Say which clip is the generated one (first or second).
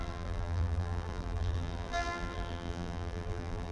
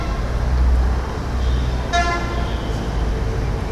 first